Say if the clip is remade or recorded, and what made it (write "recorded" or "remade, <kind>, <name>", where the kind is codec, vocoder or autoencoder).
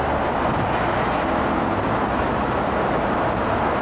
recorded